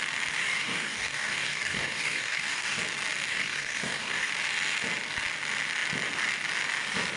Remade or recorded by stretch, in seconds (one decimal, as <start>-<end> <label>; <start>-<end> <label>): 0.0-0.4 recorded; 0.4-2.8 remade; 2.8-3.3 recorded; 3.3-4.3 remade; 4.3-7.2 recorded